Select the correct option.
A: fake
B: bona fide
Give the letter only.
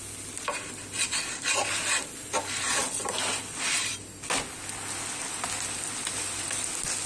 B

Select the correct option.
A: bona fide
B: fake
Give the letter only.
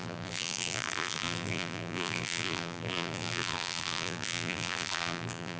B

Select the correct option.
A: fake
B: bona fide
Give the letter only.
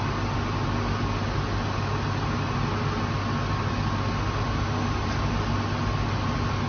B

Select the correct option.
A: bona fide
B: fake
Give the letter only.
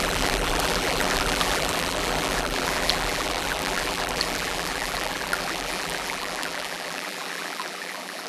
B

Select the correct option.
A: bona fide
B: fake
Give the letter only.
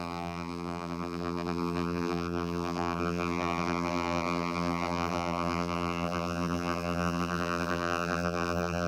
B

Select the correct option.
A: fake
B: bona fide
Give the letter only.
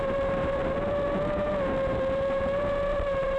A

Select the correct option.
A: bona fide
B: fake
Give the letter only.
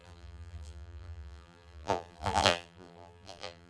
B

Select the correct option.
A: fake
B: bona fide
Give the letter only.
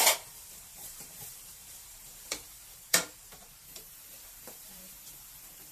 A